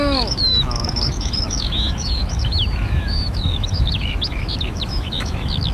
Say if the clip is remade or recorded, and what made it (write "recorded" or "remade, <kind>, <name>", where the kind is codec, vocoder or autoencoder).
remade, autoencoder, DAC-VAE